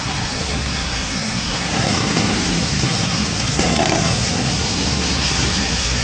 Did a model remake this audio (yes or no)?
yes